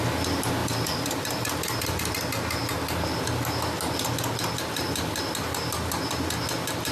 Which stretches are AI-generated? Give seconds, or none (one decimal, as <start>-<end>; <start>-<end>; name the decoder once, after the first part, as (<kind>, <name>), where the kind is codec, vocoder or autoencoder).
0.6-2.1 (vocoder, BigVGAN v2)